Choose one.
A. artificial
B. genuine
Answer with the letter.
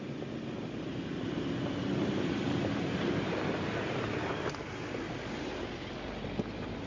B